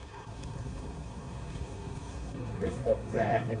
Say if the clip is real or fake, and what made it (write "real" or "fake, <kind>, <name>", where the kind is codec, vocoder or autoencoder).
fake, codec, SNAC